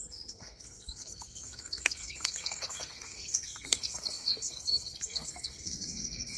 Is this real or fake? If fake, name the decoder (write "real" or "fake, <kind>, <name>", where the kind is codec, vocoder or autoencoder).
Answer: fake, codec, SNAC